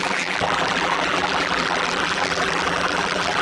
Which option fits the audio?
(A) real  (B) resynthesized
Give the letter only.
B